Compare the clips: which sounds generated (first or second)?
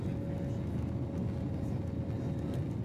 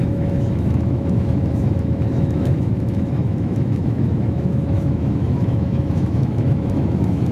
second